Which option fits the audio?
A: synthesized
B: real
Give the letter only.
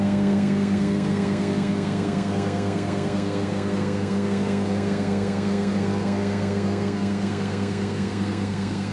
A